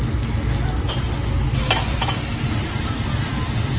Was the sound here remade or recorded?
recorded